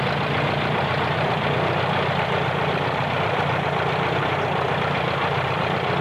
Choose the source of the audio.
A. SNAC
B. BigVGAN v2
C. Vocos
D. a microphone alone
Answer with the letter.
B